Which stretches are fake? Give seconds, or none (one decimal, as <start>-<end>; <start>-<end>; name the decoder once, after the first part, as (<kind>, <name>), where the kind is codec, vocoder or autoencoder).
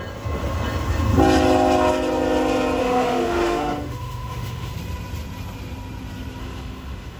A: 2.8-4.7 (autoencoder, DAC-VAE); 6.4-7.2